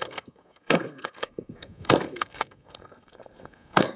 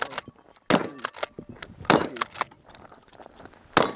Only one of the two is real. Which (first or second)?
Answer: second